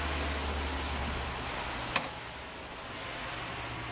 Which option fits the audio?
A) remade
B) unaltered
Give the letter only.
B